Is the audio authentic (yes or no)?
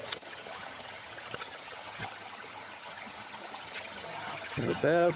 no